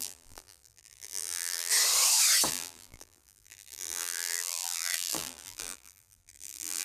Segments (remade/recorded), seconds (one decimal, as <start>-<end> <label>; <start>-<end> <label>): 0.0-1.7 remade; 1.7-2.5 recorded; 2.5-6.8 remade